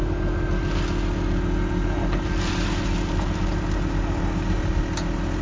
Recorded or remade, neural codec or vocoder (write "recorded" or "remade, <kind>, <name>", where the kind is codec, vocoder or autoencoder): recorded